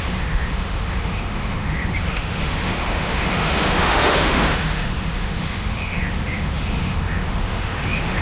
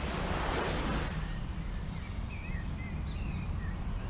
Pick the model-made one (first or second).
first